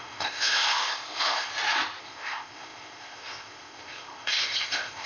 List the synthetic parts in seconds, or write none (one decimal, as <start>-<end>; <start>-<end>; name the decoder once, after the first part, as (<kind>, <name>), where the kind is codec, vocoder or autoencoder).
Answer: 0.0-1.5 (codec, ZipCodec); 2.0-5.1